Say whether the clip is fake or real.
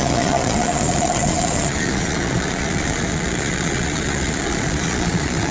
fake